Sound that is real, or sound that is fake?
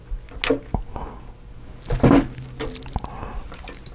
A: real